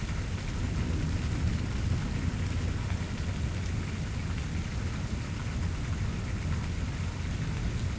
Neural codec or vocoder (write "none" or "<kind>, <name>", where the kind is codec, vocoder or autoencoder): none